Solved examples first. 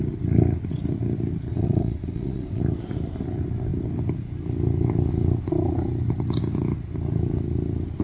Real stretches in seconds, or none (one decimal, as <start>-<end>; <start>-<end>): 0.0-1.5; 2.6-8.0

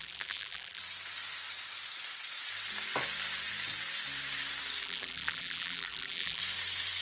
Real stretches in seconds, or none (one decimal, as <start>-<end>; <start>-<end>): 0.8-4.8; 6.4-7.0

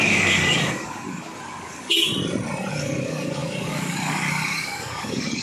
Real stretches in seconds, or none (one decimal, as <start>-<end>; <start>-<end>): 2.1-2.7